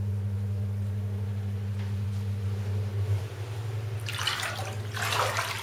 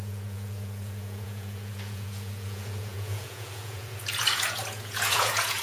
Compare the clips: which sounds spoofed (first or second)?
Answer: second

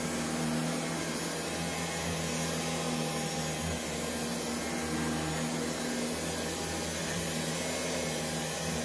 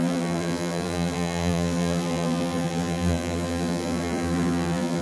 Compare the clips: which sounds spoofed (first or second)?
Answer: second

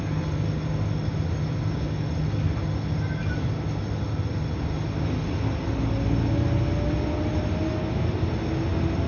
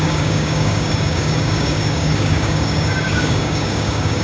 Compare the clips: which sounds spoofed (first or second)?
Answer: second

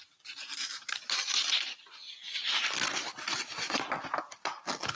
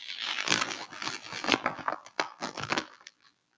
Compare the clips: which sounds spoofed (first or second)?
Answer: second